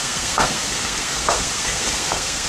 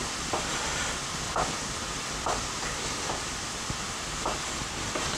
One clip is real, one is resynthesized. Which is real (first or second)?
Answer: second